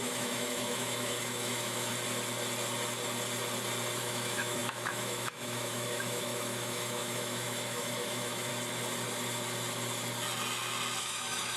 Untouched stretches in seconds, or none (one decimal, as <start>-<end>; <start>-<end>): 1.9-4.0; 8.5-11.0